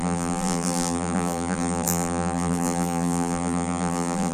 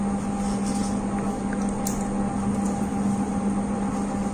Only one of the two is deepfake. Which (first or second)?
first